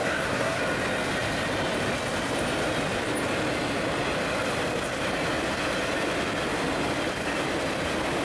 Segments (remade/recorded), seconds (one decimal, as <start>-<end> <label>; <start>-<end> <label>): 0.0-0.6 remade; 0.6-8.2 recorded